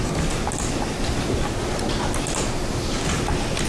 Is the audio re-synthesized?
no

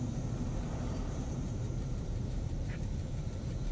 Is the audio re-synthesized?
yes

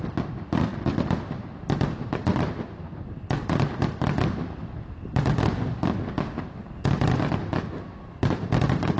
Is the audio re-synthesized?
no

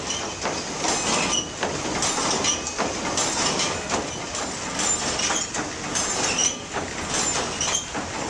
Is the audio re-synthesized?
no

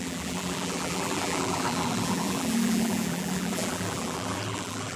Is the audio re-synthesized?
yes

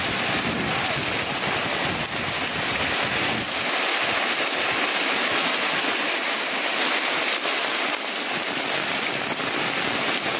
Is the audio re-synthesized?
no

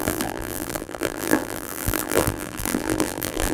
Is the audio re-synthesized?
yes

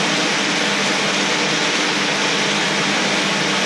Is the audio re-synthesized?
no